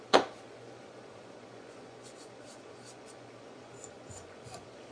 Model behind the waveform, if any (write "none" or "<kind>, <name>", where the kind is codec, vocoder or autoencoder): vocoder, Vocos